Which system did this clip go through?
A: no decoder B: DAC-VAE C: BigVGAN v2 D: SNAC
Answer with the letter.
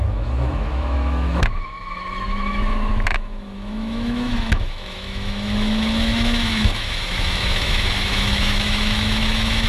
B